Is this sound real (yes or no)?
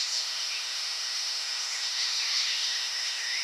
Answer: no